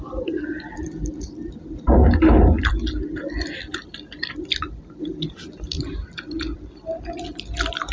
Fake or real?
fake